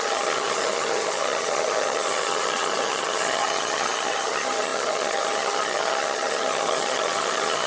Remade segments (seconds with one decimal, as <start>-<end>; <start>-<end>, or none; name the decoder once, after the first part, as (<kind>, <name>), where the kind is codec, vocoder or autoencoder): 0.0-7.7 (vocoder, HiFi-GAN)